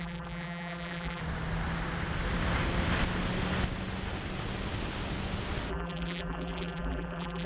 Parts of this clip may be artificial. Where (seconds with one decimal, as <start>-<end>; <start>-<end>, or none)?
0.0-1.2; 5.7-7.5